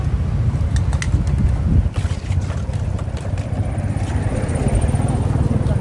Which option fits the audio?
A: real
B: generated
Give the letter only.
A